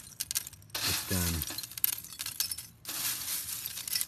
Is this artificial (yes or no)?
no